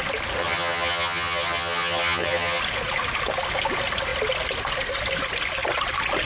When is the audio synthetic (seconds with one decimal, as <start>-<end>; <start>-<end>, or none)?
0.4-2.6